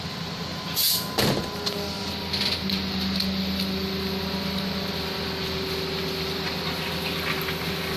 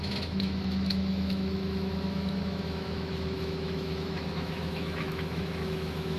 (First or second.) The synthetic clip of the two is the second